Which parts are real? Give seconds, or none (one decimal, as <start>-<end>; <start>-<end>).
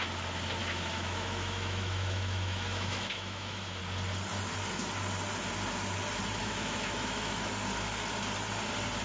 0.0-0.6; 3.8-6.4; 7.5-9.0